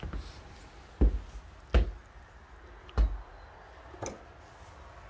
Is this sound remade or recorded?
recorded